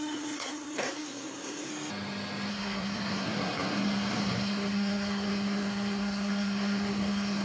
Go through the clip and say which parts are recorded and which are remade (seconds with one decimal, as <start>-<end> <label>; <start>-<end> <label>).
0.0-1.7 remade; 1.7-2.5 recorded; 2.5-7.4 remade